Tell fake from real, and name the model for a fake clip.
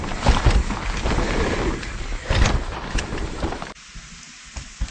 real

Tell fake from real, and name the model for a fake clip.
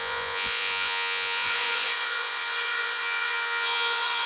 fake, vocoder, Vocos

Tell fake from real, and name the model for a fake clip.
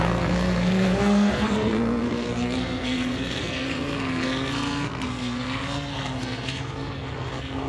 fake, codec, SNAC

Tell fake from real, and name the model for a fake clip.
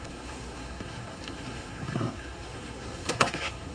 fake, codec, SNAC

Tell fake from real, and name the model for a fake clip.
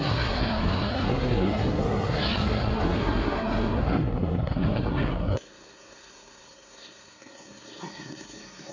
fake, codec, SNAC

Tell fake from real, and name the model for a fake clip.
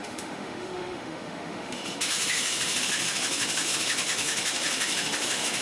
fake, autoencoder, DAC-VAE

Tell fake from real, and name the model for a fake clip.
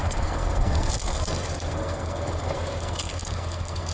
fake, codec, SNAC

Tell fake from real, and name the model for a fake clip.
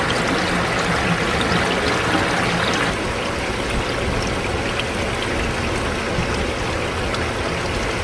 real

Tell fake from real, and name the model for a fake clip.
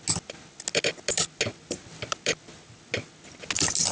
real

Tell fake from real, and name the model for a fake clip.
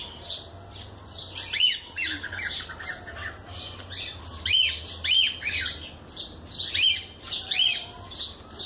real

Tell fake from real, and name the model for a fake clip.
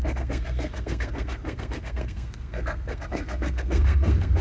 fake, codec, SNAC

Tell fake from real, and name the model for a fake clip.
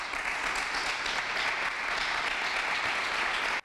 real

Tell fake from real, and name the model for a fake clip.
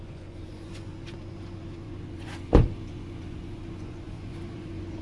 fake, vocoder, Vocos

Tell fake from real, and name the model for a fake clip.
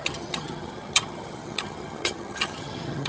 fake, vocoder, HiFi-GAN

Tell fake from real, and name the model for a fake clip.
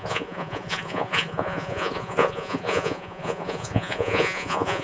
fake, vocoder, Vocos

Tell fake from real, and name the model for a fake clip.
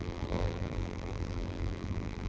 fake, vocoder, BigVGAN v2